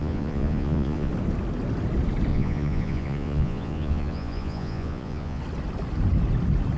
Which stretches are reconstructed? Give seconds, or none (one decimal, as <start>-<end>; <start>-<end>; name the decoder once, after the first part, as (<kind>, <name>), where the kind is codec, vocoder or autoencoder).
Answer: 0.0-1.1 (vocoder, Vocos); 2.3-5.4